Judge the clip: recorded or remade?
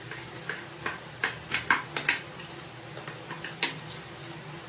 recorded